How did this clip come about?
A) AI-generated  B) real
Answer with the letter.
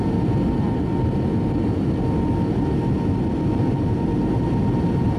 B